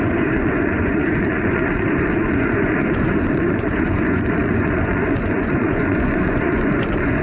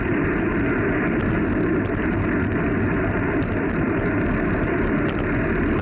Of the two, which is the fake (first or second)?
first